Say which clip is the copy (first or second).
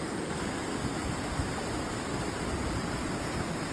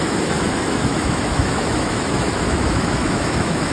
second